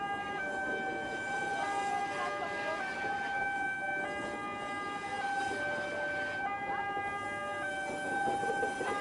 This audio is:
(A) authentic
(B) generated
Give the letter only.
A